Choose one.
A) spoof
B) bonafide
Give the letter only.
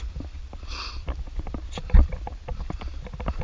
B